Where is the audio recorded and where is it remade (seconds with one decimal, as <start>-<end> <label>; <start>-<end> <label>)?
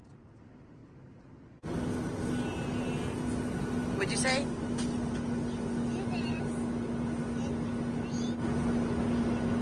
0.0-9.6 recorded